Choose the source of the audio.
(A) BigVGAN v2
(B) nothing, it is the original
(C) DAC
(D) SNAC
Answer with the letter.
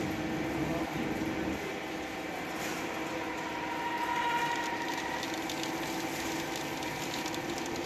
B